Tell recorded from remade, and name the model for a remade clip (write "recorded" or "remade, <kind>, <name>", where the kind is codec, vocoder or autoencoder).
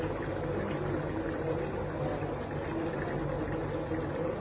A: recorded